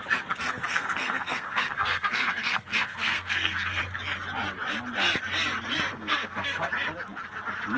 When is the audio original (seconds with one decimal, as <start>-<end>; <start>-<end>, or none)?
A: 0.0-0.7; 3.8-5.9; 6.7-7.8